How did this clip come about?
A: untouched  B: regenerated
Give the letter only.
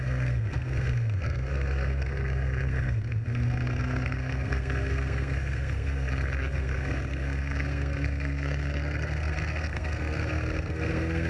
B